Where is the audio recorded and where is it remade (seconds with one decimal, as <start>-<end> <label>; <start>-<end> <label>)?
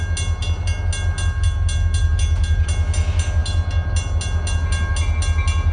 0.0-5.7 recorded